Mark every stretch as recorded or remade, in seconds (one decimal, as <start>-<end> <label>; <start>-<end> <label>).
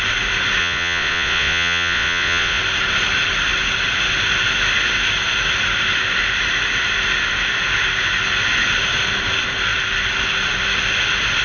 0.0-0.6 recorded; 0.6-2.6 remade; 2.6-11.4 recorded